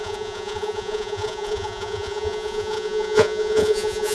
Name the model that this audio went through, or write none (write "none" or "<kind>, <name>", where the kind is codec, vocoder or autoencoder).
vocoder, Vocos